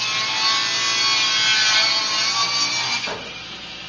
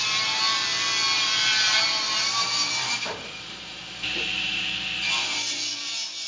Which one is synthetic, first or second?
second